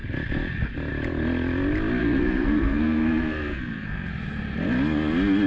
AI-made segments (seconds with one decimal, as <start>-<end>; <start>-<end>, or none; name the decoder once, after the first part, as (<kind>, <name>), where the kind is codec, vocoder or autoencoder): 2.0-4.1 (codec, SNAC)